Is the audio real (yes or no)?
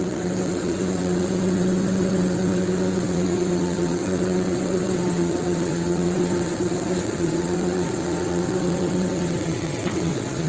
no